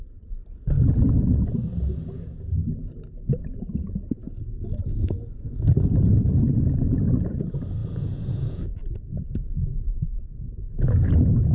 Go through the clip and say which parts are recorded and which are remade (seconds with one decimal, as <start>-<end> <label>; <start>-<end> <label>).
0.0-3.4 recorded; 3.4-5.7 remade; 5.7-7.8 recorded; 7.8-11.1 remade; 11.1-11.5 recorded